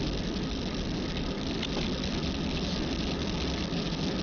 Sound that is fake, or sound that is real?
real